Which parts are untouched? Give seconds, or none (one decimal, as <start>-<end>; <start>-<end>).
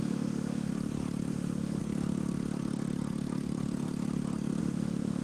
0.7-1.3; 1.8-4.6